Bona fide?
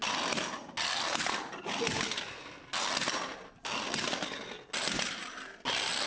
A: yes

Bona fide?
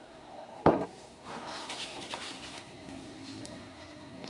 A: no